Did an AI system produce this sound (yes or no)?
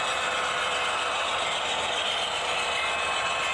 no